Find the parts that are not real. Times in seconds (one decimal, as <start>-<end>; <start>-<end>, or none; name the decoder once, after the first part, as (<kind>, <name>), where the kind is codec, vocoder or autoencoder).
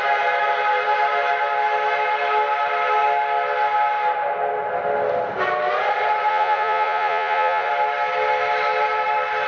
6.3-7.7 (vocoder, Vocos)